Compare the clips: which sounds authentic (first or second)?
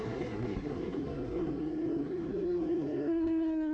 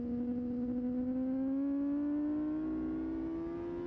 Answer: second